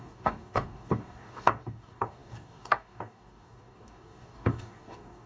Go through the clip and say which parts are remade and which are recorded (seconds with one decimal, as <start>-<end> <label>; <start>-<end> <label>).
0.0-5.3 remade